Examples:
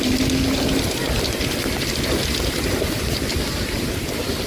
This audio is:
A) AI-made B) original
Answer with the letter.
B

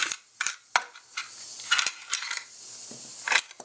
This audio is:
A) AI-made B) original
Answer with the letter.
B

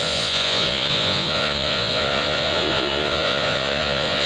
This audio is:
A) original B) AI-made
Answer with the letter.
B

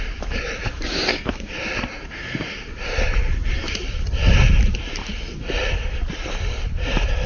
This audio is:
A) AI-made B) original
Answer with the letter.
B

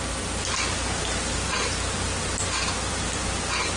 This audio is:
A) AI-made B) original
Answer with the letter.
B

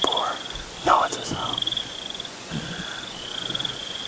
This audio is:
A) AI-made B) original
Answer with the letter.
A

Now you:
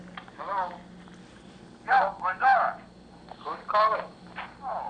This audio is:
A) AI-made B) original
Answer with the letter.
B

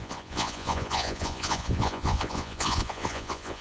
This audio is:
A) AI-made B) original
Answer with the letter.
A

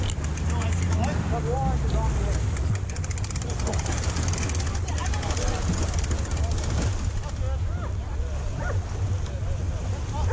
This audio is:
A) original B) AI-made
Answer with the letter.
A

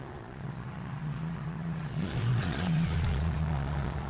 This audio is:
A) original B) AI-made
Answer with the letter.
B